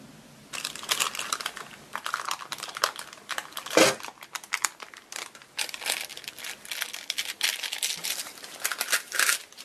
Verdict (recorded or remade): recorded